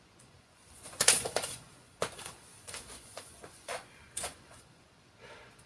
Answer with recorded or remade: remade